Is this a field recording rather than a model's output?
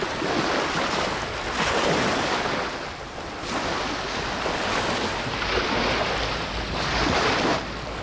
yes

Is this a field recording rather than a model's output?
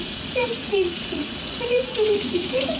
no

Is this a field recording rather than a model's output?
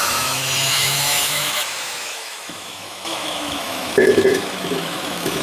no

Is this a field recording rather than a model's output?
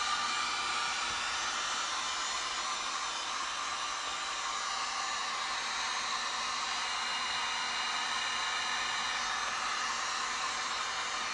yes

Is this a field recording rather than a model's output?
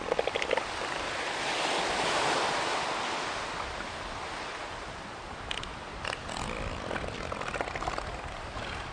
yes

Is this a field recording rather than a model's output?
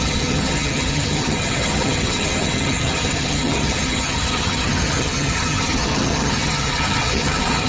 no